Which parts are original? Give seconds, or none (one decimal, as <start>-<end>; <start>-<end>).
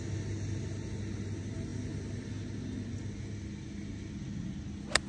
0.0-5.1